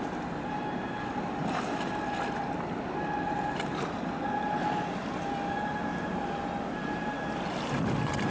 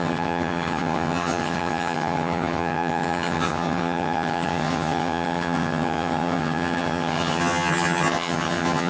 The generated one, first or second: second